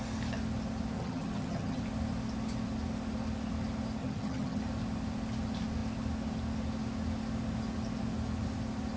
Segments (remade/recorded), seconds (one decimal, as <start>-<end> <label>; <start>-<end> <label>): 0.0-1.0 recorded; 1.0-1.8 remade; 1.8-4.0 recorded; 4.0-4.6 remade; 4.6-9.0 recorded